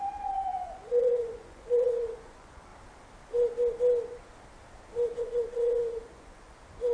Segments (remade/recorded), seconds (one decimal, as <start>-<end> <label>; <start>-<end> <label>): 0.0-2.7 remade; 2.7-5.2 recorded; 5.2-6.9 remade